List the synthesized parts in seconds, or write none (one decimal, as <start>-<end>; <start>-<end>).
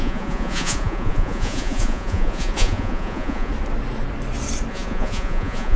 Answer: 0.0-3.5; 4.7-5.8